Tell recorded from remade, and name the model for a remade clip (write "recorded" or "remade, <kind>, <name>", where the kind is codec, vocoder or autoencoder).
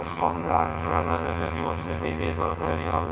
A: remade, vocoder, HiFi-GAN